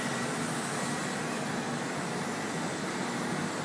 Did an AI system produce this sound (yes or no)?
no